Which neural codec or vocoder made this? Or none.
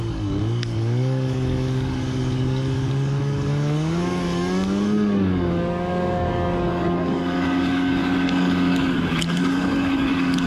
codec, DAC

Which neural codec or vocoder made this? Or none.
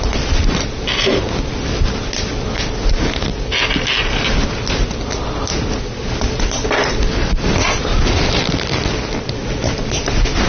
none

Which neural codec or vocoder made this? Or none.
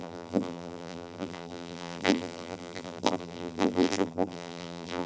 vocoder, BigVGAN v2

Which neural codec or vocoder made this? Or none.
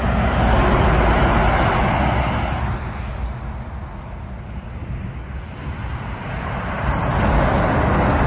none